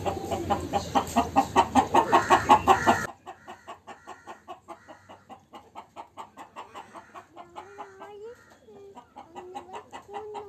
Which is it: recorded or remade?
recorded